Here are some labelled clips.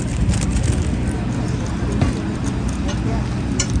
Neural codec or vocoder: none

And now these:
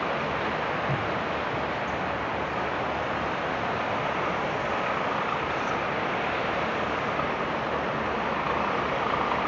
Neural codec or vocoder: none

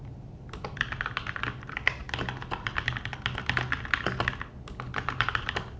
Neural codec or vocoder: none